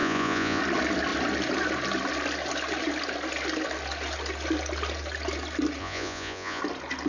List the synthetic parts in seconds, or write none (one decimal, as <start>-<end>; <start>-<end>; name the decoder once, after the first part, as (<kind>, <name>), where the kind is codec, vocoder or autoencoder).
0.0-0.6 (vocoder, Vocos); 5.8-6.6